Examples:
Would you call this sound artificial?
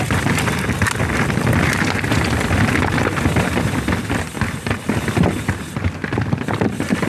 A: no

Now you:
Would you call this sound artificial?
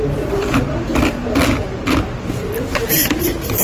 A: no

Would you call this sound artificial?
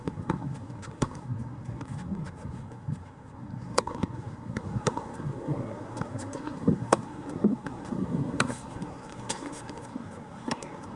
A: yes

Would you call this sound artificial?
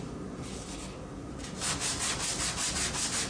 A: no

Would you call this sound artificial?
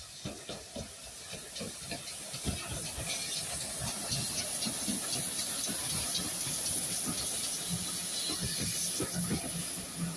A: no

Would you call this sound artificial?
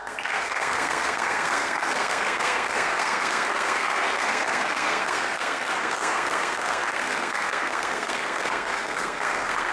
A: yes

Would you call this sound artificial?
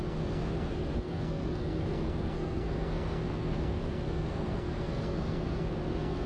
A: yes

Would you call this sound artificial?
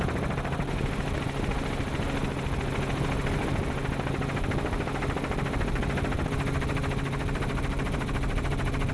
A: no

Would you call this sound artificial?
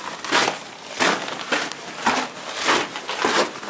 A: no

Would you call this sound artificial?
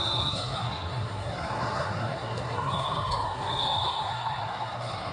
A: yes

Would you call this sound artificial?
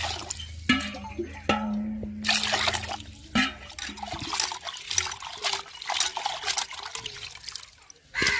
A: no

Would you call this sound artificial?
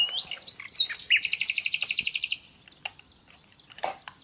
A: no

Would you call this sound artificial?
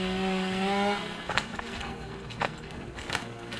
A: yes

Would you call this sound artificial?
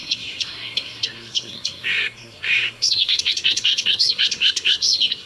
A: yes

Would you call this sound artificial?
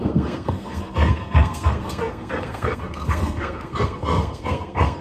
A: yes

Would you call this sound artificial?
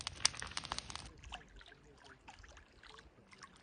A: no